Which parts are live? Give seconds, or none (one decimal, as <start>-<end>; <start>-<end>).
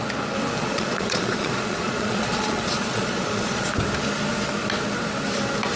0.0-0.6; 3.7-5.8